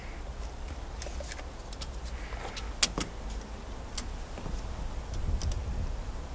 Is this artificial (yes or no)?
no